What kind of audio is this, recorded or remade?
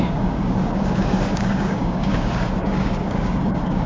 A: remade